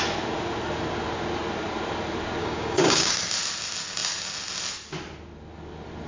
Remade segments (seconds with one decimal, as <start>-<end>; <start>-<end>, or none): 2.4-3.1